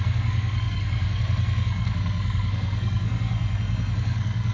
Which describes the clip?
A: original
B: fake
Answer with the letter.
B